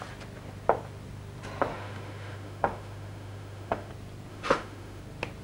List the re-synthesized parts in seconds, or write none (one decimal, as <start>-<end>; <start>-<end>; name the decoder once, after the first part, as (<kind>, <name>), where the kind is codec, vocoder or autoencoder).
1.7-3.9 (autoencoder, DAC-VAE); 4.3-5.0